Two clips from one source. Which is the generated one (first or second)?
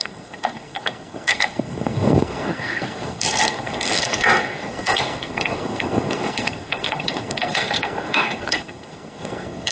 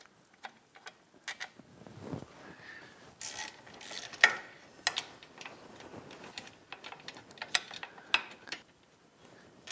first